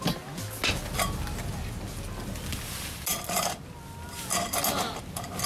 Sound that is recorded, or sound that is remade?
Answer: recorded